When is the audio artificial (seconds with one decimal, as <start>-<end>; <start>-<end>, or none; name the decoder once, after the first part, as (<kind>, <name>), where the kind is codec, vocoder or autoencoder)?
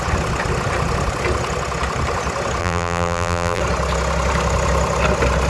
2.6-3.6 (vocoder, BigVGAN v2)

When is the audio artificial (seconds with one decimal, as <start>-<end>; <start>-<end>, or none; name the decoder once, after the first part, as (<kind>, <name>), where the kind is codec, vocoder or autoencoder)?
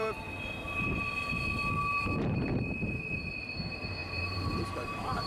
4.0-5.3 (vocoder, BigVGAN v2)